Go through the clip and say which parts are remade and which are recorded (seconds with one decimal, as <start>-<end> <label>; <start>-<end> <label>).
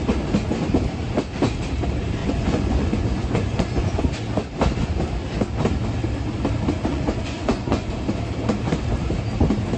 0.0-2.2 recorded; 2.2-4.0 remade; 4.0-6.9 recorded; 6.9-7.9 remade; 7.9-9.8 recorded